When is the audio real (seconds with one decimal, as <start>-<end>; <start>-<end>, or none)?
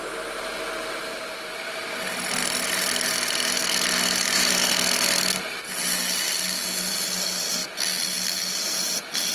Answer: 0.0-1.0; 1.8-9.3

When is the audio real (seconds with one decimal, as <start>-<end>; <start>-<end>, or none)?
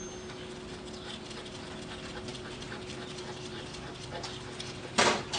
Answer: 0.0-5.4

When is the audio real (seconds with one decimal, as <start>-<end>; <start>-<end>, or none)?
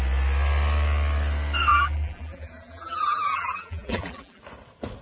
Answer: 0.0-1.7; 4.4-5.0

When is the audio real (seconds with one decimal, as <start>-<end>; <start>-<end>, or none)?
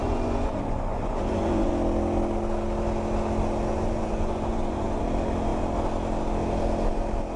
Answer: 1.7-3.7; 5.0-7.4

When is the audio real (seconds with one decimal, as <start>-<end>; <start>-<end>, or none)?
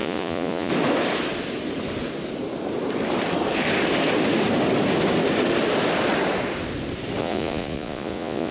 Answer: 0.7-7.2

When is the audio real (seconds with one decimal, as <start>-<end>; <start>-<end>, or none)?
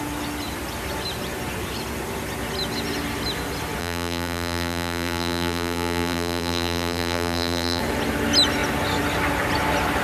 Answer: 0.0-3.8; 7.8-10.0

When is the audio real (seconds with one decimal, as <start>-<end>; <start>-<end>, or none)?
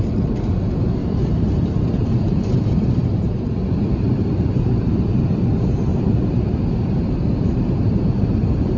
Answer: 0.0-1.0; 5.2-5.9; 8.3-8.8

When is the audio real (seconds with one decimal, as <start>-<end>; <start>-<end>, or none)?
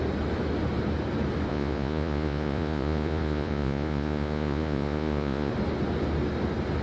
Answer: 0.0-1.5; 5.5-6.8